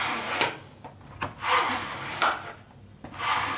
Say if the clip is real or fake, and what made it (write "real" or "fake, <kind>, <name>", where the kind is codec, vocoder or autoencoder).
real